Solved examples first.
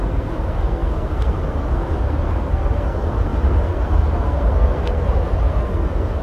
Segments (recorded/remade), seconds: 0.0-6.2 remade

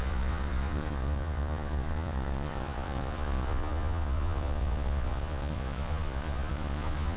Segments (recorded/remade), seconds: 0.0-7.2 remade

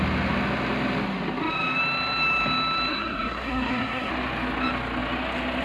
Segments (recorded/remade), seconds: 0.0-2.9 recorded; 2.9-4.1 remade; 4.1-5.6 recorded

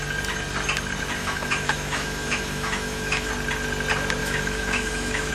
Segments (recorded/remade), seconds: 0.0-1.2 recorded; 1.2-3.3 remade; 3.3-4.2 recorded; 4.2-5.3 remade

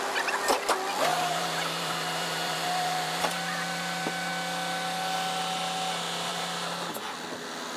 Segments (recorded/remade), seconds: 0.0-1.1 recorded; 1.1-4.3 remade; 4.3-6.3 recorded; 6.3-6.9 remade; 6.9-7.8 recorded